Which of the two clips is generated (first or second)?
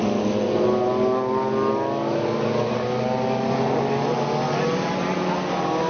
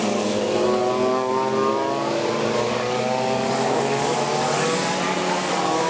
second